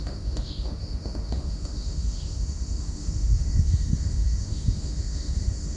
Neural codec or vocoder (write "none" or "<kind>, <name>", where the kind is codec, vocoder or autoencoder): autoencoder, DAC-VAE